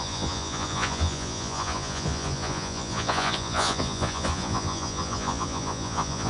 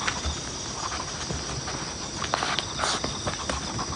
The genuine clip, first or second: second